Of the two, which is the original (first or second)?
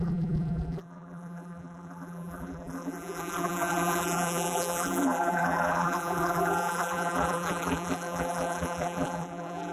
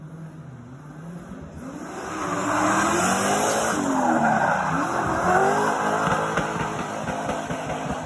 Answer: second